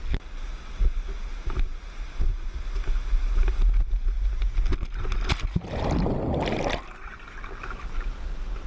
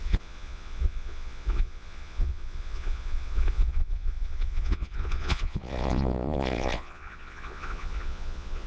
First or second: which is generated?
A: second